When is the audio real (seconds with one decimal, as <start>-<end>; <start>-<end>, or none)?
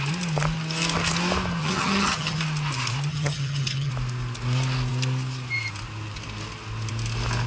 0.0-1.6; 2.4-3.1; 3.9-7.5